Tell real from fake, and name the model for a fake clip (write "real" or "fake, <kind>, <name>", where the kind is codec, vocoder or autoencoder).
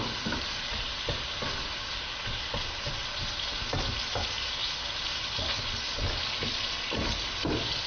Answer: real